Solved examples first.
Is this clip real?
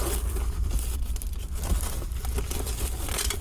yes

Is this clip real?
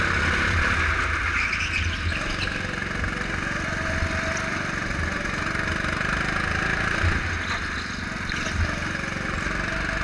yes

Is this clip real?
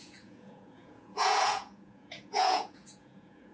no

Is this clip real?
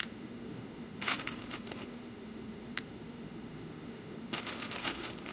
no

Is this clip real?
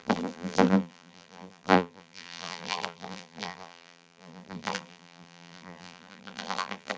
no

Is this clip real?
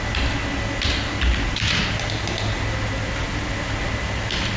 yes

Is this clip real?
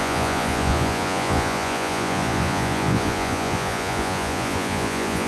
no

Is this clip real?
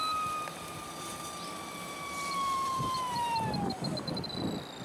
no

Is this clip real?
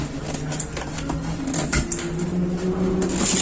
yes